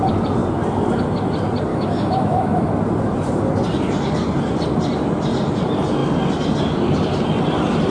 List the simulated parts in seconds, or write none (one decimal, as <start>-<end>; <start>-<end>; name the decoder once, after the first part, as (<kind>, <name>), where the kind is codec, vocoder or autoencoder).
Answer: 1.7-2.7 (autoencoder, DAC-VAE)